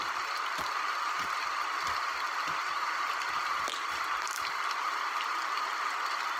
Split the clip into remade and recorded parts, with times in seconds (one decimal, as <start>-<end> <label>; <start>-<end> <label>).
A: 0.0-2.1 remade; 2.1-2.8 recorded; 2.8-6.4 remade

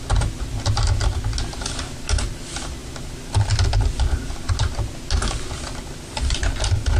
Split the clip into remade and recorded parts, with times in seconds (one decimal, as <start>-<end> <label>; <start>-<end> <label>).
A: 0.0-7.0 recorded

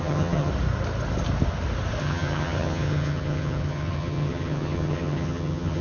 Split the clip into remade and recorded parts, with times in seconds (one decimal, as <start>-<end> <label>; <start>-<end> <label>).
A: 0.0-0.5 remade; 0.5-2.0 recorded; 2.0-5.8 remade

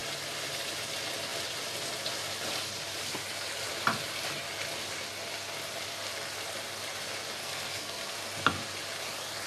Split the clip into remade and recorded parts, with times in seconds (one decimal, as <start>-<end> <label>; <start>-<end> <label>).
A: 0.0-7.4 recorded; 7.4-8.1 remade; 8.1-9.5 recorded

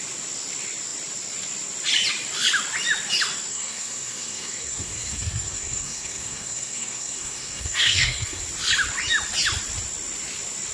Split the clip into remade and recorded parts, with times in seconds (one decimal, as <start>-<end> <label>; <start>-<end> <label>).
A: 0.0-3.5 recorded; 3.5-8.4 remade; 8.4-10.7 recorded

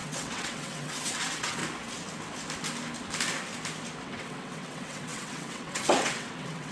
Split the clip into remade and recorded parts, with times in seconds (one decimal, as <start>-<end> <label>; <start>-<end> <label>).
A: 0.0-1.6 remade; 1.6-4.0 recorded; 4.0-6.7 remade